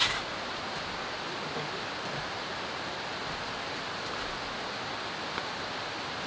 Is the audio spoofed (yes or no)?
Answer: no